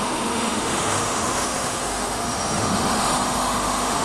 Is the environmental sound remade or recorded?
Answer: remade